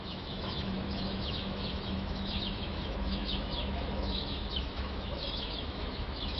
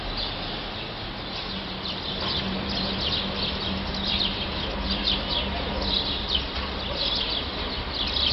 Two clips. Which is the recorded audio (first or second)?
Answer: second